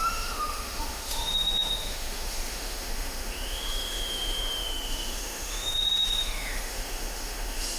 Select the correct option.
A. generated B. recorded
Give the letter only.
A